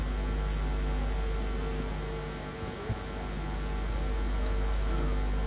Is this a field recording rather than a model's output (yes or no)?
yes